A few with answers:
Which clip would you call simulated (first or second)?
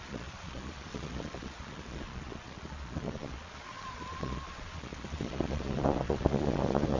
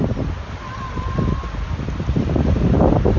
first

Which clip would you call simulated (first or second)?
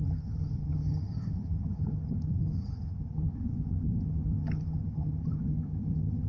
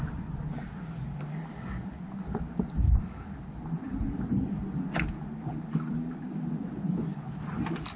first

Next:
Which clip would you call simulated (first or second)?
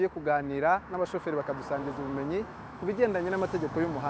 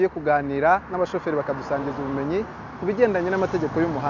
first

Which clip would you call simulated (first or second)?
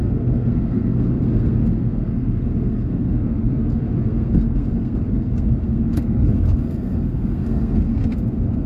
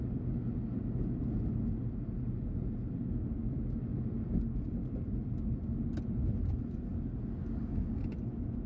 first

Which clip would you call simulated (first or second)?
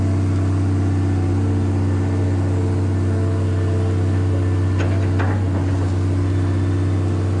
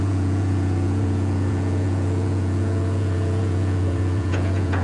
second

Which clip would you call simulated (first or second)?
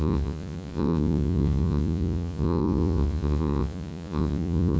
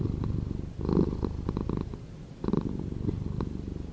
first